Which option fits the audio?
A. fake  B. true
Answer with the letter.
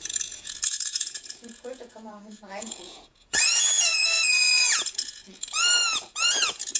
A